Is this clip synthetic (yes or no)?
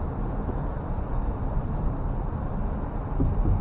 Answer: no